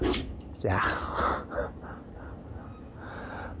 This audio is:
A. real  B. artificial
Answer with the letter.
A